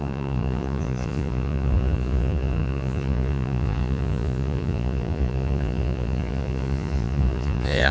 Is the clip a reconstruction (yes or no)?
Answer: yes